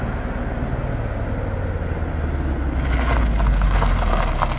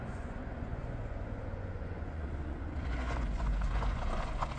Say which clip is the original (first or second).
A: first